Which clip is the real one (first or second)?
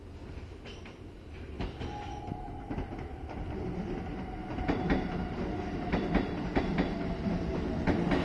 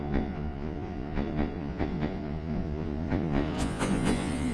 first